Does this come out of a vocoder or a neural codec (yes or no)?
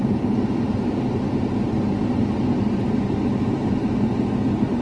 yes